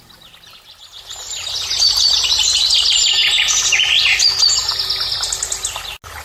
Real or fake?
real